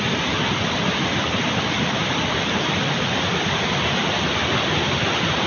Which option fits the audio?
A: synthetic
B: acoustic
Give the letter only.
B